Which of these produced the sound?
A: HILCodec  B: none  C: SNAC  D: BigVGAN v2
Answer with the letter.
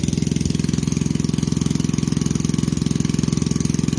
B